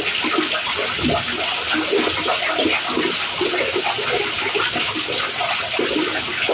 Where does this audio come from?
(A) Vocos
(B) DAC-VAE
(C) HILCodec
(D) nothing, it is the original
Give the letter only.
D